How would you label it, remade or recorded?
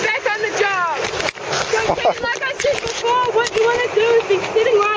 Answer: recorded